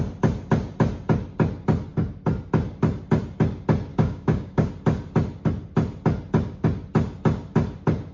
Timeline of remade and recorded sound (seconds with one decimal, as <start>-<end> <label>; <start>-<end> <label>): 0.0-3.9 recorded; 3.9-4.7 remade; 4.7-8.1 recorded

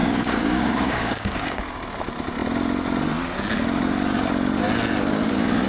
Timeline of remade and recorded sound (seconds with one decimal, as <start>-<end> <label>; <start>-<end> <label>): 0.0-1.6 remade; 1.6-5.7 recorded

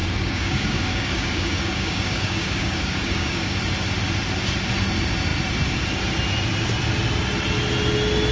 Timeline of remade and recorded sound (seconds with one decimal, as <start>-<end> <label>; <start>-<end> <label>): 0.0-3.6 remade; 3.6-8.3 recorded

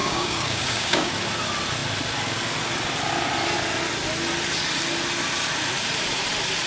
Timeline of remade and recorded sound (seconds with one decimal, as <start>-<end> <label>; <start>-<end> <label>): 0.0-1.1 remade; 1.1-6.7 recorded

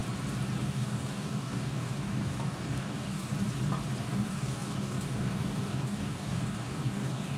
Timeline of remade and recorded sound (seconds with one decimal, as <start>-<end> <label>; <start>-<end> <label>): 0.0-0.6 recorded; 0.6-3.3 remade; 3.3-4.0 recorded; 4.0-7.4 remade